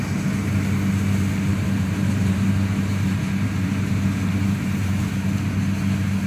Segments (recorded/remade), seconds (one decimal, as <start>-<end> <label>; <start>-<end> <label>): 0.0-1.5 recorded; 1.5-5.3 remade; 5.3-6.3 recorded